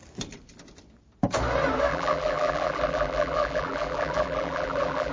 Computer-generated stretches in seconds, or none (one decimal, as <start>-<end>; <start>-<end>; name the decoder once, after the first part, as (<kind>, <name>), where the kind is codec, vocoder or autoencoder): 1.9-5.1 (vocoder, BigVGAN v2)